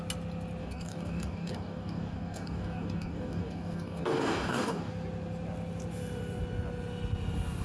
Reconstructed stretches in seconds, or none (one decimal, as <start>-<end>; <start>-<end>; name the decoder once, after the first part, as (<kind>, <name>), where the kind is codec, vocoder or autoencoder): 0.6-4.9 (codec, DAC)